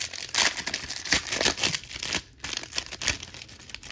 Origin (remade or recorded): recorded